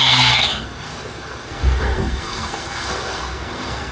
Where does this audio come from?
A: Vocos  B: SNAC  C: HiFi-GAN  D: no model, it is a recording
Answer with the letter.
B